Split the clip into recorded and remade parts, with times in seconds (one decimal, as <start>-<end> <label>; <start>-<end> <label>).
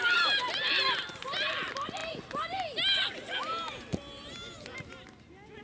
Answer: 0.0-5.6 recorded